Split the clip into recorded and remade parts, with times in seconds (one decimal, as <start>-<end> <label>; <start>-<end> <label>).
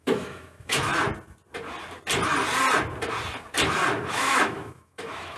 0.0-0.9 remade; 0.9-4.1 recorded; 4.1-5.4 remade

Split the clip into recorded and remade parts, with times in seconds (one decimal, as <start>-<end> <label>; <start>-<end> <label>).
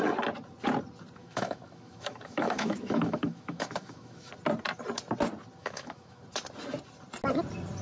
0.0-1.2 recorded; 1.2-4.3 remade; 4.3-5.6 recorded; 5.6-6.2 remade; 6.2-7.8 recorded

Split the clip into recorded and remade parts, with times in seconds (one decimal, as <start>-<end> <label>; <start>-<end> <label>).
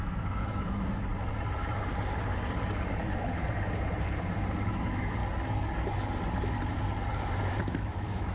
0.0-1.1 remade; 1.1-3.0 recorded; 3.0-3.4 remade; 3.4-4.7 recorded; 4.7-5.2 remade; 5.2-7.6 recorded; 7.6-8.3 remade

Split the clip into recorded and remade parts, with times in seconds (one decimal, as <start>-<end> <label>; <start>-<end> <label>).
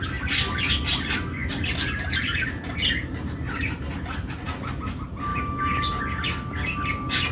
0.0-5.3 recorded; 5.3-6.0 remade; 6.0-7.3 recorded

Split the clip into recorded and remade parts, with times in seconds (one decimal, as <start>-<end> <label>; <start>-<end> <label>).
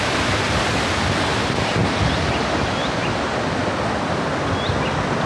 0.0-5.3 recorded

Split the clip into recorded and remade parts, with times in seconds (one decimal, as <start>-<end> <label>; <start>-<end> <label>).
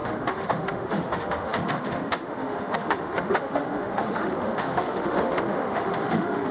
0.0-6.5 remade